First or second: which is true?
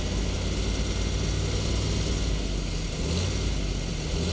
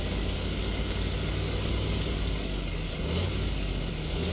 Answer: first